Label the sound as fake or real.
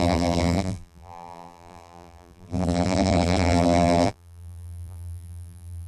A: fake